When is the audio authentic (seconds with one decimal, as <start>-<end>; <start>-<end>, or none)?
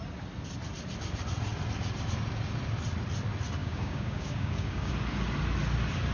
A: 0.0-3.6; 4.9-6.1